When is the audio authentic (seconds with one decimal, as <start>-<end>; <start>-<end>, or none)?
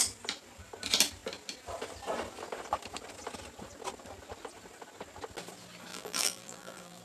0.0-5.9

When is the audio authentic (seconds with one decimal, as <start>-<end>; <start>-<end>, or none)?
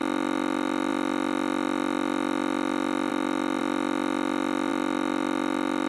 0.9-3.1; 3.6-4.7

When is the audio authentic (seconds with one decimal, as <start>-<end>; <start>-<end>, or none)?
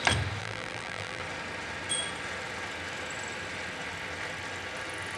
0.0-0.4; 1.2-5.2